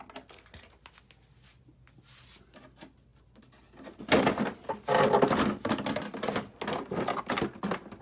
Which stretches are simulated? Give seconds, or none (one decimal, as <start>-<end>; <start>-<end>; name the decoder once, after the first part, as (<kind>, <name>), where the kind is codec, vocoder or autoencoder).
none